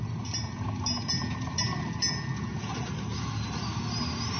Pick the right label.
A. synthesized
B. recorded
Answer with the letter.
B